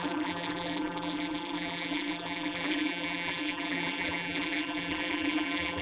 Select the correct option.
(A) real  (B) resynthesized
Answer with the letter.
B